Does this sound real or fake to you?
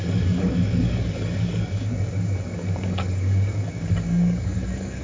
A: fake